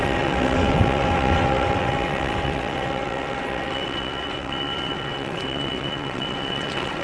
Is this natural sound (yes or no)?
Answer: no